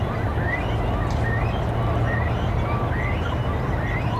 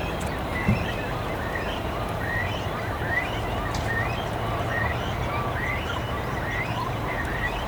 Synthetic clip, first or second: second